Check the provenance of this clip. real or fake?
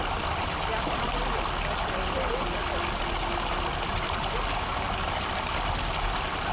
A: real